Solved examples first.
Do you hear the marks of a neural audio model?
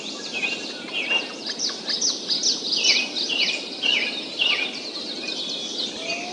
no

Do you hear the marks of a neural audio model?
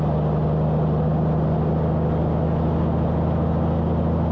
no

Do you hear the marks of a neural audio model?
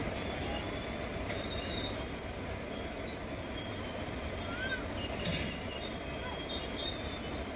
no